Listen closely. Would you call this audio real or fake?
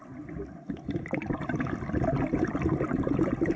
real